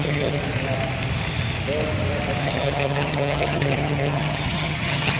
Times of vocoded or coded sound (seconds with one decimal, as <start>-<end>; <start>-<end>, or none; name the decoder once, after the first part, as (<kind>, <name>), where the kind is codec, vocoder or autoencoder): 0.0-0.4 (vocoder, HiFi-GAN); 2.4-5.2

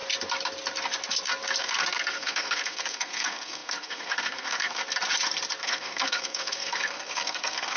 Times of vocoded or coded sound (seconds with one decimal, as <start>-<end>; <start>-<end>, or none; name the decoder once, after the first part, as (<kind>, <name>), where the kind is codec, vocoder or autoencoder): 1.6-4.8 (codec, SNAC); 5.6-7.8

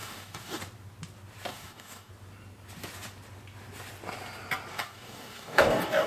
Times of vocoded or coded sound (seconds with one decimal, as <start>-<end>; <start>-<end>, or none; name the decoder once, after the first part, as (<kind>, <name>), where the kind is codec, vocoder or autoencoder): 0.0-0.6 (codec, DAC); 1.5-2.1; 4.7-6.1